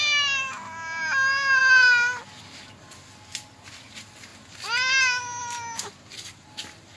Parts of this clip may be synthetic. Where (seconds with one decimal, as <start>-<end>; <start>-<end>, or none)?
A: none